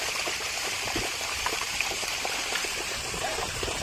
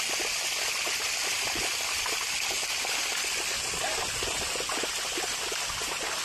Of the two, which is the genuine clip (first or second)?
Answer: second